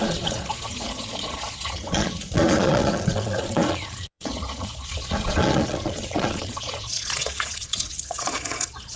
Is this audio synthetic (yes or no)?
yes